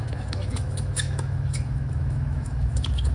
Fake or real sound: fake